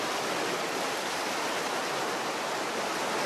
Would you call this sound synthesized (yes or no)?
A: no